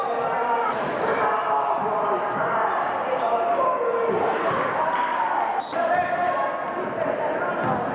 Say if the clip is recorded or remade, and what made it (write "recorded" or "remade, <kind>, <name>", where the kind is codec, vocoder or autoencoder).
recorded